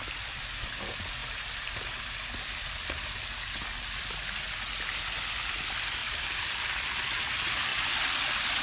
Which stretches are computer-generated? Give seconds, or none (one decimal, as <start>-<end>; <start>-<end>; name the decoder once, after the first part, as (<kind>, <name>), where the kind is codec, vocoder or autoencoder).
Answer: 6.0-7.0 (vocoder, BigVGAN v2); 7.7-8.6

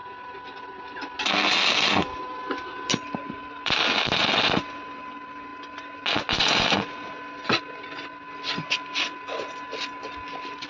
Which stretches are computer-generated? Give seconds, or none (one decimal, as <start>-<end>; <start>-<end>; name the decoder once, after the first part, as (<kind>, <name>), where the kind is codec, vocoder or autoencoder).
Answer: none

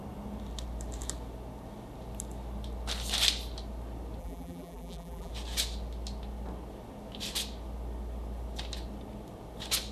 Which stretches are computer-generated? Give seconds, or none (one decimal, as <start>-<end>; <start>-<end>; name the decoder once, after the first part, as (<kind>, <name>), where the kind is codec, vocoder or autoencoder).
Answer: 4.2-5.3 (vocoder, BigVGAN v2)

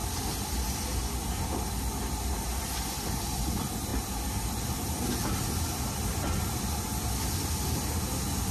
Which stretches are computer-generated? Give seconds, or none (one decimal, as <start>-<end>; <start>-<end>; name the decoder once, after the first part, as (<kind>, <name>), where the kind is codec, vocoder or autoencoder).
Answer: none

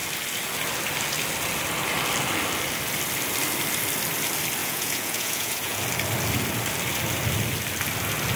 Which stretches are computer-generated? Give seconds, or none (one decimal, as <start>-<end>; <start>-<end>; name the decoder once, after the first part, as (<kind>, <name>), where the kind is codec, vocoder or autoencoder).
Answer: 4.6-5.8 (vocoder, Vocos)

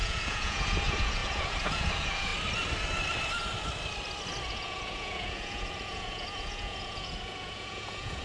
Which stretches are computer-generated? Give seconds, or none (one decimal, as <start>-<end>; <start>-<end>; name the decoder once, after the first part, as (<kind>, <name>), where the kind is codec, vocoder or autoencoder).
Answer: 0.0-2.3 (vocoder, Vocos); 4.5-8.2

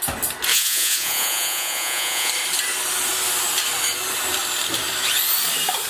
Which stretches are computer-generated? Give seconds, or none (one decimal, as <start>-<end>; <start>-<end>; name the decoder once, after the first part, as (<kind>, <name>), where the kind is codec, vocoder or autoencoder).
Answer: 0.5-2.3 (vocoder, Vocos)

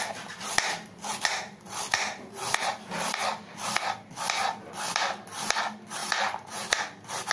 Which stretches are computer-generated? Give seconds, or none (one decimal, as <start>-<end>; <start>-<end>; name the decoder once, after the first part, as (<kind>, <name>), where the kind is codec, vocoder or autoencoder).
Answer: 6.0-6.8 (vocoder, BigVGAN v2)